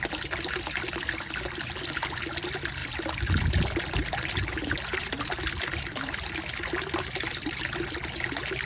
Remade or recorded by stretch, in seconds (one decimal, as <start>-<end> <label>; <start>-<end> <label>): 0.0-8.7 recorded